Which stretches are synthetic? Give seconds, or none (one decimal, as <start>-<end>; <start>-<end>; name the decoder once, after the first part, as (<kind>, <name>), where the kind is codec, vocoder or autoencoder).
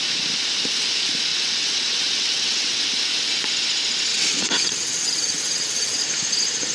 1.3-2.8 (vocoder, WaveNeXt); 4.1-6.0